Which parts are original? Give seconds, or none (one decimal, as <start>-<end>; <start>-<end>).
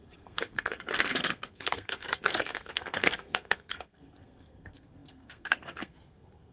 none